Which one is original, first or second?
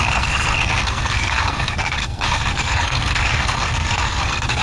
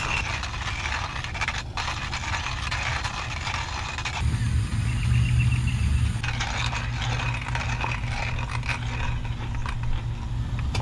second